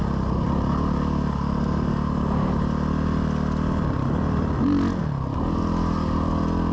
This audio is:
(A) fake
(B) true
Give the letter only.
B